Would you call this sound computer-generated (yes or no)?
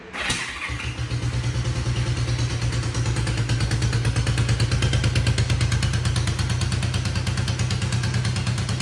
no